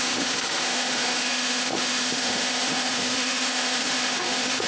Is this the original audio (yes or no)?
no